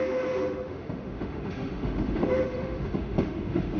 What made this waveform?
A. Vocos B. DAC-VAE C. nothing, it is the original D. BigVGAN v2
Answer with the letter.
B